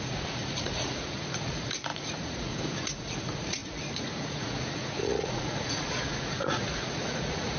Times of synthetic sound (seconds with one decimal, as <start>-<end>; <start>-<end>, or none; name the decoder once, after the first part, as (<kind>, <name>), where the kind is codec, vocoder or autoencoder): 0.0-7.6 (vocoder, Vocos)